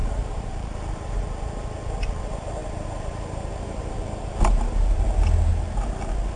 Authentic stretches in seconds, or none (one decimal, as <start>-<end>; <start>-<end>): 0.5-2.6; 3.8-6.4